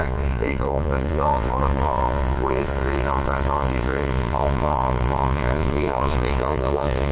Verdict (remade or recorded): remade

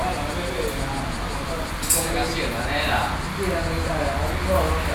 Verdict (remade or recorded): recorded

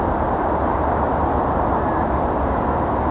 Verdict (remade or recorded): recorded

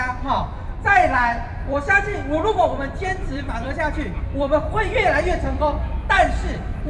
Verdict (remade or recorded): remade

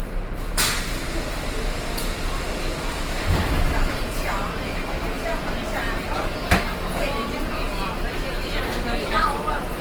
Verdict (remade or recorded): remade